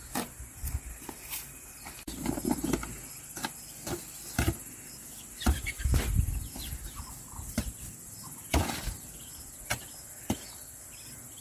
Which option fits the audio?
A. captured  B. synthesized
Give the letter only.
B